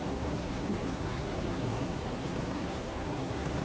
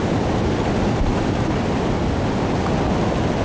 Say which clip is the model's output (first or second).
first